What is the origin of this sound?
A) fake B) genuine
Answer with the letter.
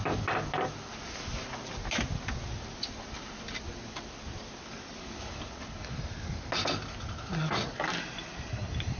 B